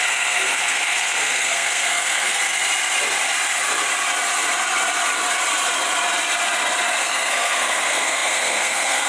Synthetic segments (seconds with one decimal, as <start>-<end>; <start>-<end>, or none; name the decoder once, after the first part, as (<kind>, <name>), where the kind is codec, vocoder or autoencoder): 0.0-2.4 (codec, SNAC); 7.0-9.1